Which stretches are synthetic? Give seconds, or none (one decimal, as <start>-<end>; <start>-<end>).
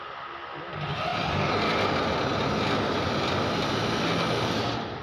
none